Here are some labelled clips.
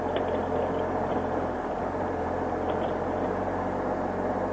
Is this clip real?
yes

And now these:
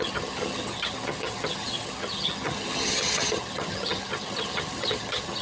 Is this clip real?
no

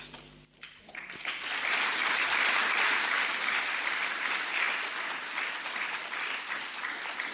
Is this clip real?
no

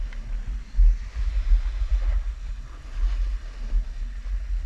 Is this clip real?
yes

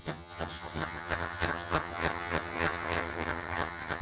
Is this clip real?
no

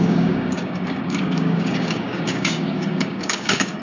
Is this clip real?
no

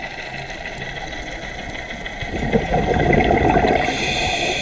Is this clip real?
yes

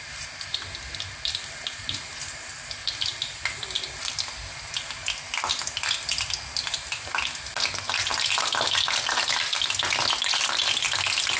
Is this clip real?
yes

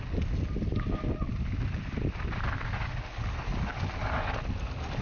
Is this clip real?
yes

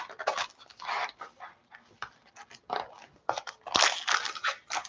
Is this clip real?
no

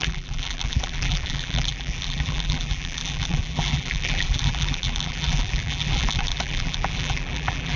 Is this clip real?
no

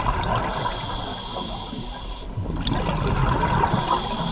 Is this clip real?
yes